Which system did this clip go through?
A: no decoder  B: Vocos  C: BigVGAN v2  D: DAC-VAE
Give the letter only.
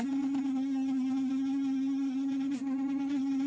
A